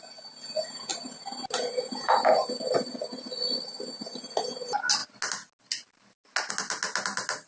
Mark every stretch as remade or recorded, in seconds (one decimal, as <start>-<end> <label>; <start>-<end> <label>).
0.0-7.5 recorded